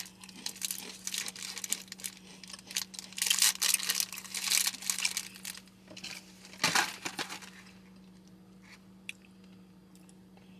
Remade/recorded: recorded